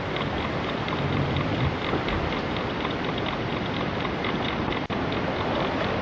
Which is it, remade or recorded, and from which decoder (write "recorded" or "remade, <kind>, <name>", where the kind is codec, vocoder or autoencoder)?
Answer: recorded